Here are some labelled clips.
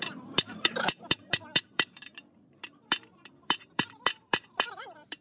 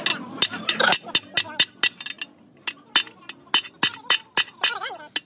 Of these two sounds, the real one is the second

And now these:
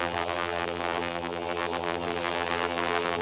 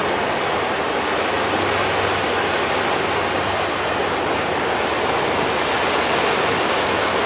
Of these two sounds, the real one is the second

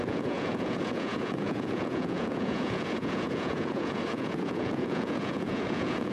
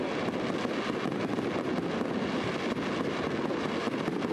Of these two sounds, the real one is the second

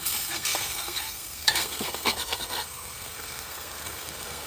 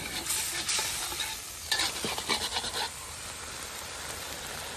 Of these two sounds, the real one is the second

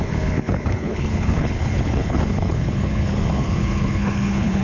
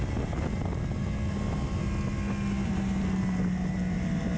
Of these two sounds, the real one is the second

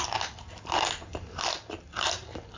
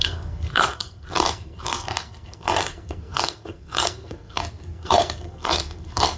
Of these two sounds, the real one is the first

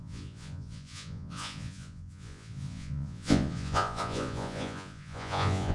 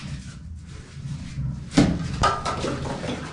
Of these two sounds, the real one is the second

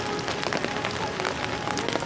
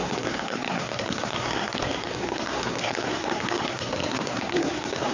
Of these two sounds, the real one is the first